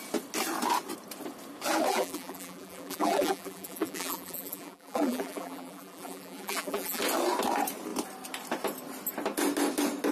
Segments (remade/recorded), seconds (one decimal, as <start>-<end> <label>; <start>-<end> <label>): 0.0-1.9 recorded; 1.9-7.0 remade; 7.0-10.1 recorded